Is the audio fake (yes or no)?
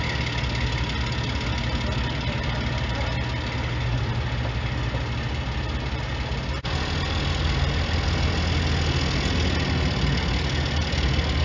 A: no